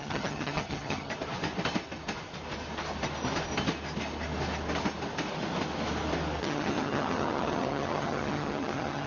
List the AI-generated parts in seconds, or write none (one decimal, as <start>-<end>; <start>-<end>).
0.0-1.1; 6.4-9.1